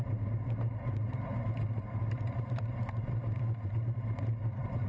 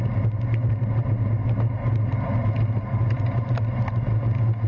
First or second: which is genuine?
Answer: second